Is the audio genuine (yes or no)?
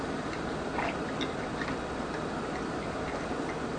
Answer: yes